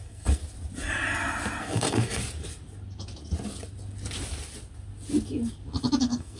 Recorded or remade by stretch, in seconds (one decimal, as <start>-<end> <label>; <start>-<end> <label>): 0.0-0.4 remade; 0.4-1.6 recorded; 1.6-2.2 remade; 2.2-6.0 recorded; 6.0-6.4 remade